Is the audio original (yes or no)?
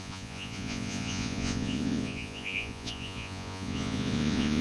no